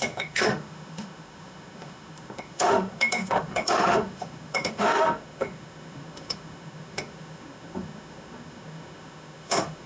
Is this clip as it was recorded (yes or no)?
no